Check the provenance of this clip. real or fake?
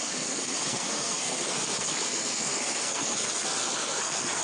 fake